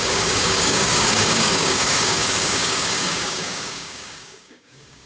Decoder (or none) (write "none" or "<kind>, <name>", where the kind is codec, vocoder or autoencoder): codec, DAC